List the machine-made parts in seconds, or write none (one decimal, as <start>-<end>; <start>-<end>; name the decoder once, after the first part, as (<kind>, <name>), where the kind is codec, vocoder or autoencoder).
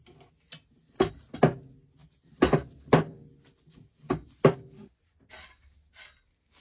none